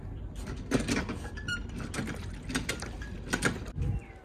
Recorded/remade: recorded